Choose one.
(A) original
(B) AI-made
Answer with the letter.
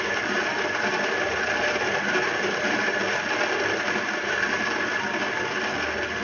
A